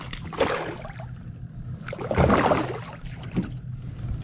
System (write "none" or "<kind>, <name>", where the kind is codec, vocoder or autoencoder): none